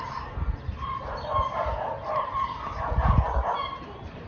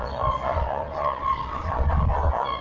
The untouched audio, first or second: first